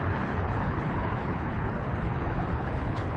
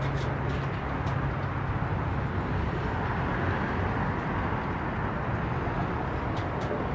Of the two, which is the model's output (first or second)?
first